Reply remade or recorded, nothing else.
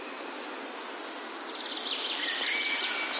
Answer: recorded